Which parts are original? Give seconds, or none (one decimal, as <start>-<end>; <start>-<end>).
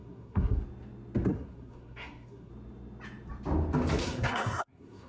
0.6-1.3; 2.5-4.0